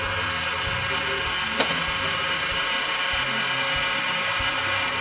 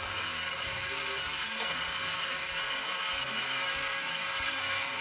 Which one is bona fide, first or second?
first